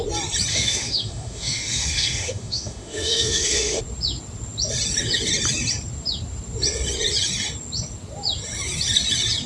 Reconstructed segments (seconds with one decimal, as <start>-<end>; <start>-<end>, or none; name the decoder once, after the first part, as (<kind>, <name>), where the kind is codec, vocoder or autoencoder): 0.5-3.8 (autoencoder, DAC-VAE)